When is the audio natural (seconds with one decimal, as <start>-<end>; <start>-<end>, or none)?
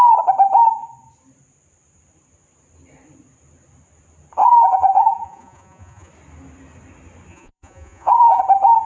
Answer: 0.0-4.4; 6.1-7.3; 8.4-8.9